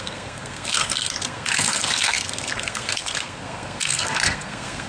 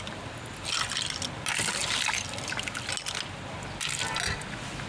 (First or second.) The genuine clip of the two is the second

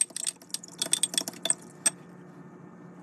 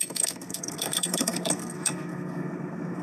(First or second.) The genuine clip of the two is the first